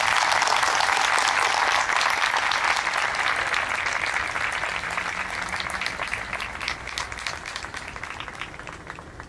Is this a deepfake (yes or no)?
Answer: no